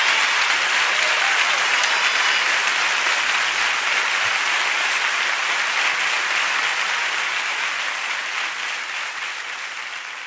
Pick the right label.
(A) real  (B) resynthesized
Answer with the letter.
A